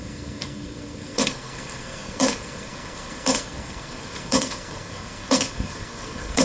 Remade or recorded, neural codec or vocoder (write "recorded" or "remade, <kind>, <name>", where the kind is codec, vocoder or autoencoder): remade, codec, SNAC